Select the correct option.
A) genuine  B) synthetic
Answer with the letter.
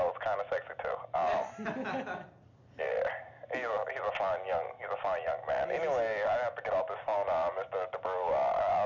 A